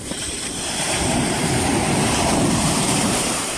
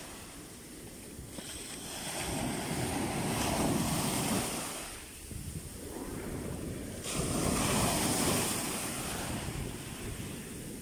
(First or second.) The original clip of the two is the second